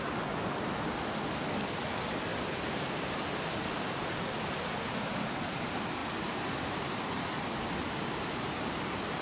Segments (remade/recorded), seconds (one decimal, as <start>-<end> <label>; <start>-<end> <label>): 0.0-9.2 recorded